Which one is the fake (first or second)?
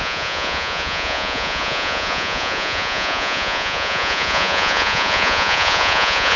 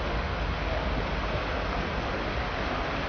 first